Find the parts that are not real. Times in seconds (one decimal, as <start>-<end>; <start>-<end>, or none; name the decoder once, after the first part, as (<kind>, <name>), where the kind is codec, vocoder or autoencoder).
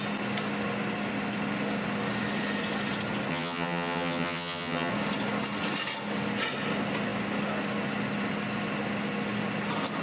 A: 3.3-4.9 (vocoder, HiFi-GAN)